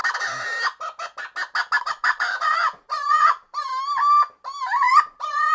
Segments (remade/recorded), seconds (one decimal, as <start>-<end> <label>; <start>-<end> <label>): 0.0-1.8 recorded; 1.8-3.7 remade; 3.7-4.8 recorded; 4.8-5.5 remade